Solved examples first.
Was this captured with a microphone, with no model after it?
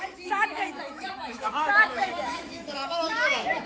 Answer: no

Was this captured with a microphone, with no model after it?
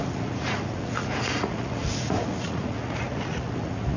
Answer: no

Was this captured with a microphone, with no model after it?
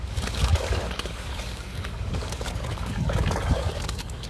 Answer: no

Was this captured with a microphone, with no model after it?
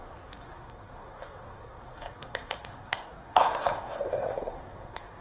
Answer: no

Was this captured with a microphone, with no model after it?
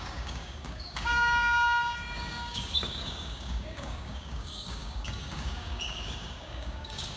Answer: no